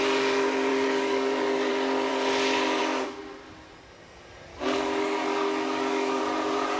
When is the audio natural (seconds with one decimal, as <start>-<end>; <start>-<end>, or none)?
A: 0.0-0.7; 1.7-4.5; 6.2-6.8